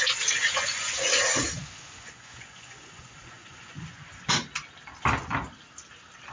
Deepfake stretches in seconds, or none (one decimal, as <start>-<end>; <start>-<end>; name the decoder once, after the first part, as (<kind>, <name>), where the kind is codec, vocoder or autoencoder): 0.4-1.1 (vocoder, Vocos); 1.6-4.3